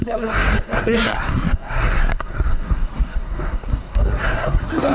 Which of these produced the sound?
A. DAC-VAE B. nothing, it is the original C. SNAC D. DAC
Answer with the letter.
C